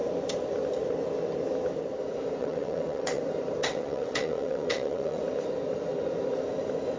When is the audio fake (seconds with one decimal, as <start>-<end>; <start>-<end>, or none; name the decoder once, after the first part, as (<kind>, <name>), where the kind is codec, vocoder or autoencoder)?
2.4-3.2 (vocoder, WaveNeXt); 3.6-5.2